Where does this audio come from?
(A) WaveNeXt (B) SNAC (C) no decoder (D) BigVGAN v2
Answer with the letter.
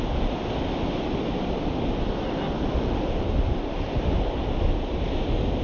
C